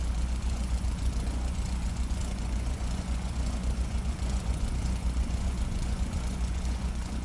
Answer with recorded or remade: remade